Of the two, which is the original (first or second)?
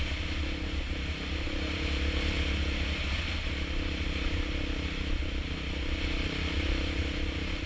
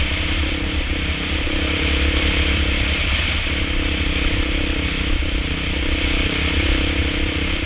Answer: first